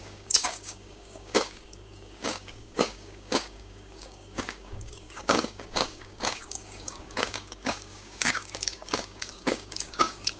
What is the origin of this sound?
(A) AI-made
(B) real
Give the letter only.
A